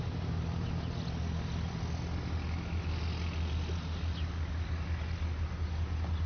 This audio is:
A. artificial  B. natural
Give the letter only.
B